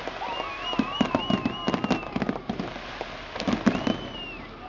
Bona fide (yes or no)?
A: yes